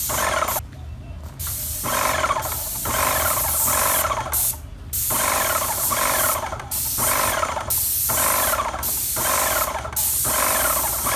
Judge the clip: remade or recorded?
recorded